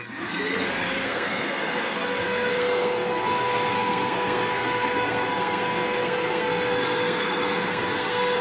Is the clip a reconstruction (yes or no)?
yes